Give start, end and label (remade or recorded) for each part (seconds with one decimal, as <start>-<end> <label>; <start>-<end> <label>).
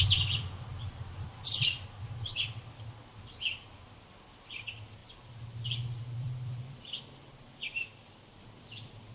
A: 0.0-0.7 recorded; 0.7-2.6 remade; 2.6-5.0 recorded; 5.0-7.0 remade; 7.0-7.9 recorded; 7.9-8.5 remade; 8.5-9.1 recorded